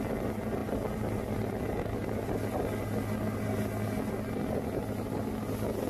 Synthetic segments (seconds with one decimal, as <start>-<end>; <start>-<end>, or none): none